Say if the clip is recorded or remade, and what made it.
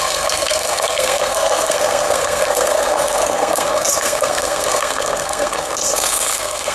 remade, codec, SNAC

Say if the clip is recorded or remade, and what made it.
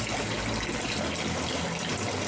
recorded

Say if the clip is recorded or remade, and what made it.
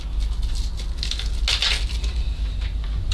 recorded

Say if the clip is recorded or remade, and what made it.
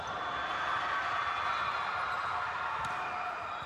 recorded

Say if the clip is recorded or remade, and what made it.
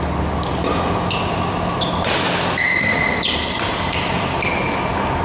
recorded